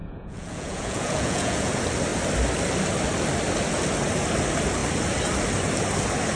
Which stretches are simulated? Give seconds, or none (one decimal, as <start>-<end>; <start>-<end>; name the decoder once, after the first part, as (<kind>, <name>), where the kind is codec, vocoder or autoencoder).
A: 0.0-1.7 (vocoder, Vocos)